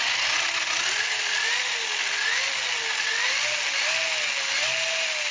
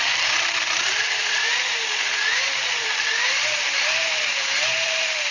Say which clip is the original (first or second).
first